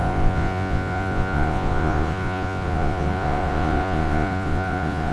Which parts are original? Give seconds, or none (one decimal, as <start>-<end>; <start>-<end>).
none